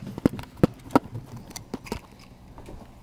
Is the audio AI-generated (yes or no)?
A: no